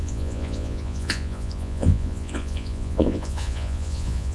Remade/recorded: remade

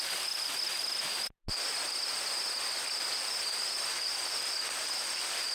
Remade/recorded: recorded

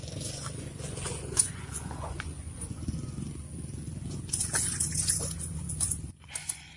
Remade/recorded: remade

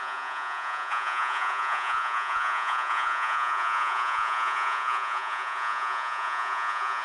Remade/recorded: remade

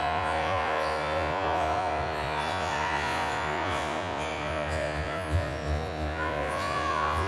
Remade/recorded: remade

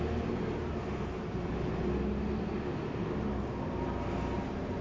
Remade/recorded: recorded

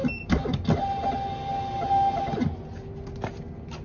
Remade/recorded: recorded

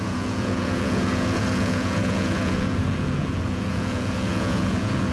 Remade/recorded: remade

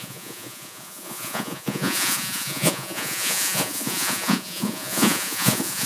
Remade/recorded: remade